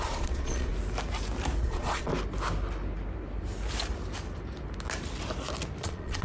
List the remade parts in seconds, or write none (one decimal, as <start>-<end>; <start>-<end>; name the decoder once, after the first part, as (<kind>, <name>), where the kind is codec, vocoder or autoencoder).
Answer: 0.0-0.7 (vocoder, Vocos); 1.6-2.1; 5.8-6.2